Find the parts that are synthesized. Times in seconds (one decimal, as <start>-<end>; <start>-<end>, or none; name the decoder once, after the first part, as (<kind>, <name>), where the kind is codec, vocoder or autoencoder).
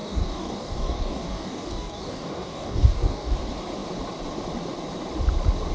0.0-3.4 (codec, DAC)